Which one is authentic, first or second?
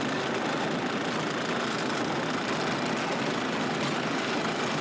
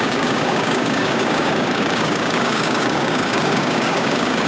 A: first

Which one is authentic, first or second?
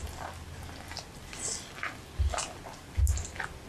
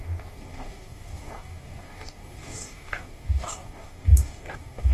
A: first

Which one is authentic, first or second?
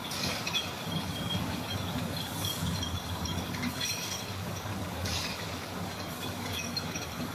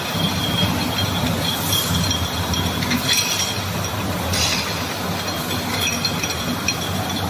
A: second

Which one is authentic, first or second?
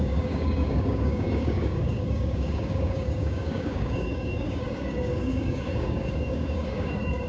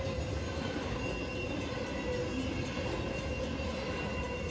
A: second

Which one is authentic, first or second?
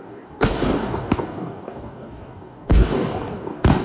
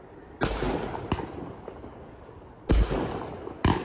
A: second